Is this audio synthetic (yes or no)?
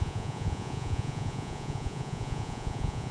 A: yes